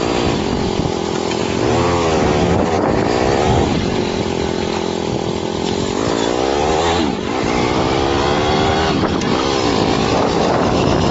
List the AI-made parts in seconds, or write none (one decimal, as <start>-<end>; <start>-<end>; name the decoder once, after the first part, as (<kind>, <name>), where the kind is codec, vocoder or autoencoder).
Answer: 1.4-3.4 (vocoder, BigVGAN v2); 9.3-11.1